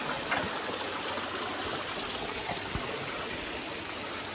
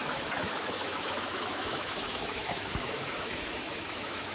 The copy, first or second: second